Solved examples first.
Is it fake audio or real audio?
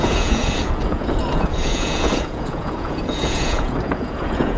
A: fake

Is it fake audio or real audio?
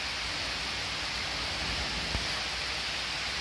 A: real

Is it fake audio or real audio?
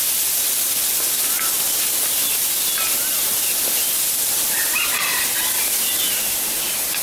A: real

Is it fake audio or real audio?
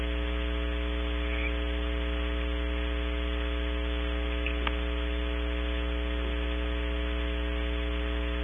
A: real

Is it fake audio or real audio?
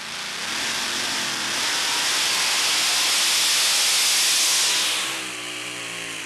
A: real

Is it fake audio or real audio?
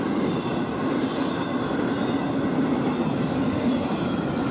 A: real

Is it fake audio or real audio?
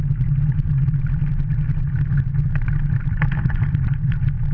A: real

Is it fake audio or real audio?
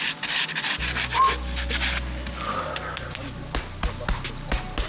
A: real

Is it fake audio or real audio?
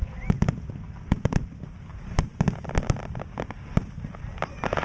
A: real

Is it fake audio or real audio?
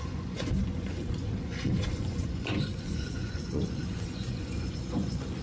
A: fake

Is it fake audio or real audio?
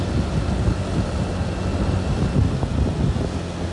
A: real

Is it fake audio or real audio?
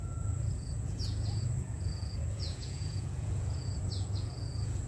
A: fake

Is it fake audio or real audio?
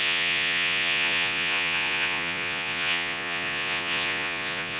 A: fake